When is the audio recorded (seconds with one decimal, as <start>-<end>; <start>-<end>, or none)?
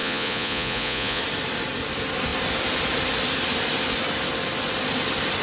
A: 1.2-5.4